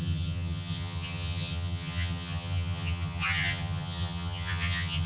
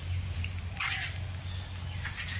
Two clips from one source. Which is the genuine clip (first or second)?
second